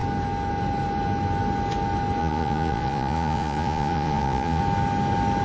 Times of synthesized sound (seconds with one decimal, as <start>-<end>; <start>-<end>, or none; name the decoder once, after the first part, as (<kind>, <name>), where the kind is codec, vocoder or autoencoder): 2.2-4.6 (vocoder, Vocos)